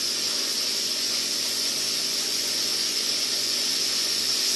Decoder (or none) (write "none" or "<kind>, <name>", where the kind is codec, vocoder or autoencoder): vocoder, Vocos